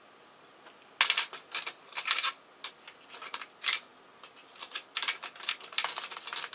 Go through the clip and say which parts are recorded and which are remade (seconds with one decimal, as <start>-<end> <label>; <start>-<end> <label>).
0.0-6.5 recorded